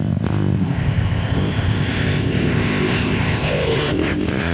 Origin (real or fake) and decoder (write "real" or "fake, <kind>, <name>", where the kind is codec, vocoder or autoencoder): fake, codec, ZipCodec